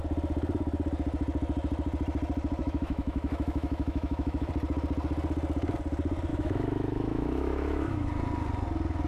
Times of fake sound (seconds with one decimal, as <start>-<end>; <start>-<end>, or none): 2.6-4.5; 6.3-8.1